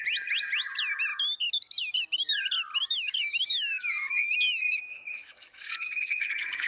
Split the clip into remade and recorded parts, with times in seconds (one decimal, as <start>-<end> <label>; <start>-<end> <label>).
0.0-2.7 recorded; 2.7-6.7 remade